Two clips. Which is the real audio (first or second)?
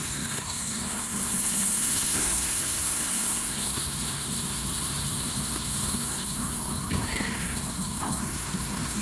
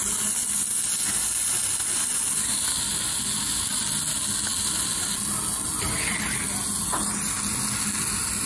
second